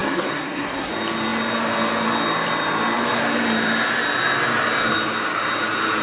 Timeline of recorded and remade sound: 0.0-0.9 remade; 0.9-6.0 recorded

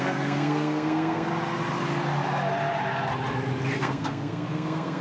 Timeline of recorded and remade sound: 0.0-1.3 remade; 1.3-3.8 recorded; 3.8-5.0 remade